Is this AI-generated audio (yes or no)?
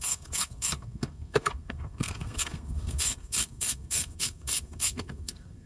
yes